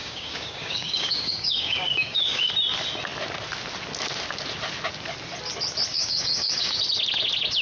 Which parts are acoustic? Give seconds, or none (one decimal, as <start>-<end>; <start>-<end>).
2.5-5.9; 6.8-7.6